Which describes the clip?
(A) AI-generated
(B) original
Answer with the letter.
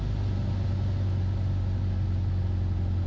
B